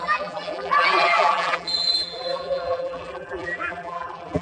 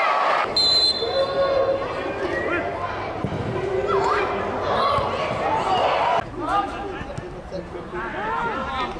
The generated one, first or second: first